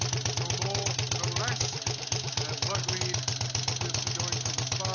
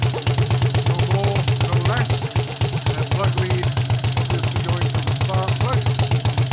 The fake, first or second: second